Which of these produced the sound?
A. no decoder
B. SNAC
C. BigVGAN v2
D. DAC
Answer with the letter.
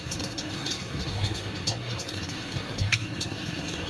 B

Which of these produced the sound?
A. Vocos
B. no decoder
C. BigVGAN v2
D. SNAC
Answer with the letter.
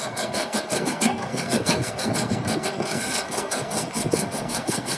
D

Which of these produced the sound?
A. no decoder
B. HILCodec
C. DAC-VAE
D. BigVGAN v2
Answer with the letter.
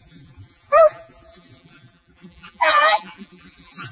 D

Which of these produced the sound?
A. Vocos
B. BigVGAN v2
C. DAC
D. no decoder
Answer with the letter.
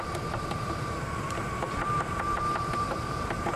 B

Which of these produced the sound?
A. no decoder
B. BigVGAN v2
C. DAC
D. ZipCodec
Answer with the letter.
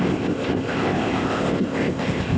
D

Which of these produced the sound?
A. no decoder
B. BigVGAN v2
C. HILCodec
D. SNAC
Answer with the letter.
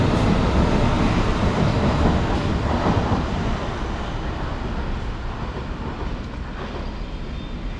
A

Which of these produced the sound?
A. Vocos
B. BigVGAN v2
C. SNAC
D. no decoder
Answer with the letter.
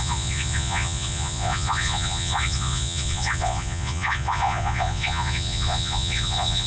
A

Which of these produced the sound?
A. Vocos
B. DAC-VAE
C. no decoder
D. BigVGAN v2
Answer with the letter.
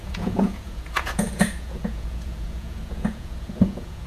A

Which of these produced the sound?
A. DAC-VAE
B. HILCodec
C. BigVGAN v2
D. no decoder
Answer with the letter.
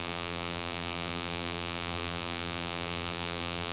C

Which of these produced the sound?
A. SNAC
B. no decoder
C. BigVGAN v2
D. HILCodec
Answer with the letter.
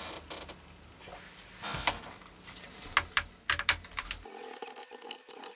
B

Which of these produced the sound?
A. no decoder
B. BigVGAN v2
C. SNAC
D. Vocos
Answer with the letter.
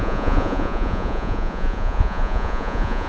D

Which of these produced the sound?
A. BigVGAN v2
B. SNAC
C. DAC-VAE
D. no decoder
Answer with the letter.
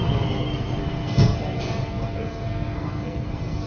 B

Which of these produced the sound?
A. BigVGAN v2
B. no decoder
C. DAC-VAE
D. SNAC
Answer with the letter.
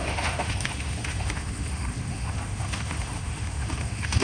C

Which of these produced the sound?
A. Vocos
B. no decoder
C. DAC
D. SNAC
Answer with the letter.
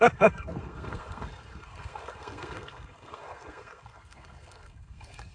D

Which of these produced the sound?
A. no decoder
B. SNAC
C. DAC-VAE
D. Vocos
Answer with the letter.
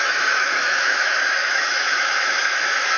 C